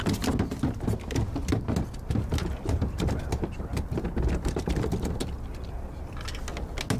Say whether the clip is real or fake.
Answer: real